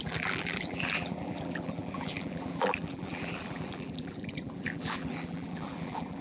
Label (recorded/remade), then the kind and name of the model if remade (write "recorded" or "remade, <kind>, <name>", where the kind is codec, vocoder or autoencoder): remade, vocoder, BigVGAN v2